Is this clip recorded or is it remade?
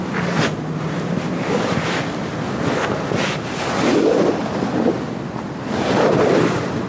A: recorded